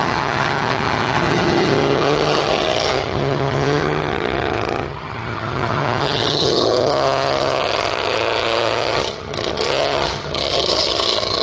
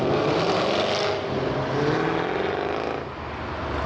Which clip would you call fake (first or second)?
first